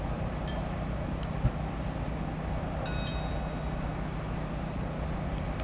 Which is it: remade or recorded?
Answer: recorded